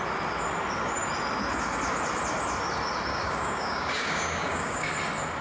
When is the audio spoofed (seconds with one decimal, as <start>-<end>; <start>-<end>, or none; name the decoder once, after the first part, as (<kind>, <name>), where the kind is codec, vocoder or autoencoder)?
3.1-4.9 (codec, DAC)